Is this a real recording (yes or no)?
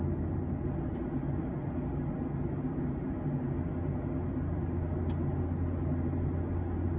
yes